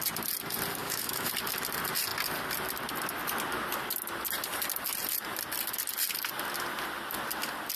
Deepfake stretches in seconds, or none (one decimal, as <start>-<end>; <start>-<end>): 0.8-1.3